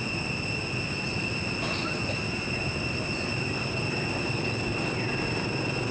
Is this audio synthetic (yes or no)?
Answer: no